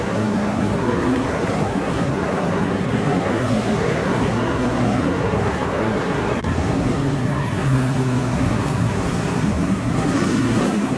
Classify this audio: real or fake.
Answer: fake